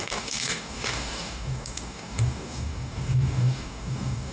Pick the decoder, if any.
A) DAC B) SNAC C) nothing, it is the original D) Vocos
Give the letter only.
A